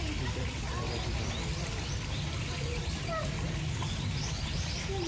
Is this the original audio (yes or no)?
yes